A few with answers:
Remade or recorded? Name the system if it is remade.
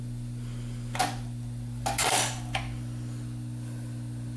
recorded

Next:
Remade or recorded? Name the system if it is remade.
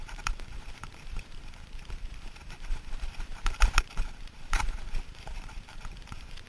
remade, vocoder, BigVGAN v2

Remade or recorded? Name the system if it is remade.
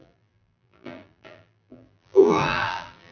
remade, vocoder, BigVGAN v2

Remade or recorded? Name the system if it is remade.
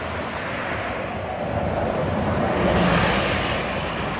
recorded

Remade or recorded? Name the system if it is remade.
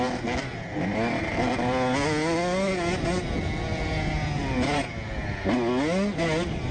recorded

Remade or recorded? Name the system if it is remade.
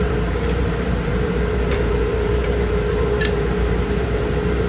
remade, vocoder, BigVGAN v2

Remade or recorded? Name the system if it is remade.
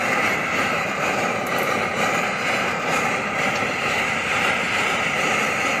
remade, vocoder, BigVGAN v2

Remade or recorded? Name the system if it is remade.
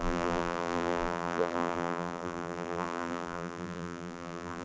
remade, vocoder, BigVGAN v2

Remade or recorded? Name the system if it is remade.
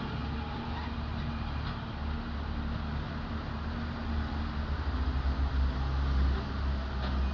recorded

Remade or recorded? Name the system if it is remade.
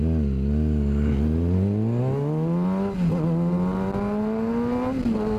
recorded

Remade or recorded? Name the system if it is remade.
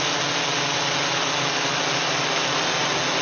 recorded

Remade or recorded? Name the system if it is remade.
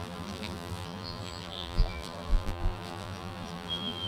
remade, vocoder, BigVGAN v2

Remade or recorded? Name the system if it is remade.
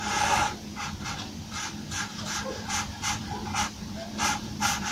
remade, vocoder, BigVGAN v2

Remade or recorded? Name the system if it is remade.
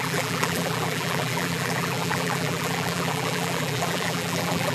remade, vocoder, BigVGAN v2